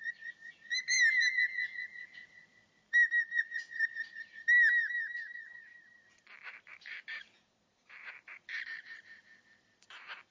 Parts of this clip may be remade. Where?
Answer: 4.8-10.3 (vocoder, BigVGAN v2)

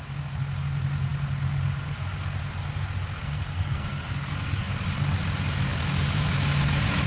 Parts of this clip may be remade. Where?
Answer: 3.2-4.7 (codec, SNAC)

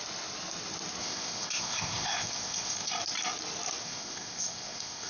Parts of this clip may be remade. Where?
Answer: 1.0-2.9 (codec, ZipCodec); 3.8-5.1

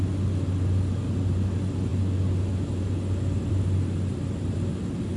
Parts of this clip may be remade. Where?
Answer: none

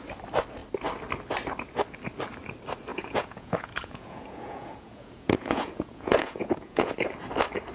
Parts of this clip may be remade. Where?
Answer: 2.9-6.9 (vocoder, Vocos)

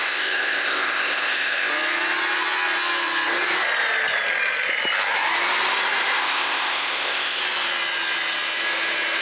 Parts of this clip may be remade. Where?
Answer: 0.0-1.7 (codec, ZipCodec); 6.2-7.4

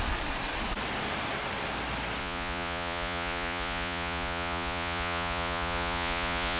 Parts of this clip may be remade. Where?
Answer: 2.2-6.6 (vocoder, Vocos)